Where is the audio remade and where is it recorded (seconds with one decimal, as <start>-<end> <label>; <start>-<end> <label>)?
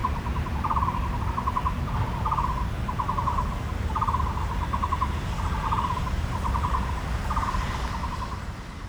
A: 0.0-8.9 recorded